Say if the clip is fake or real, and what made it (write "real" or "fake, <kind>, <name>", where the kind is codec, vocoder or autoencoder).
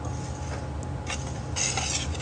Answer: real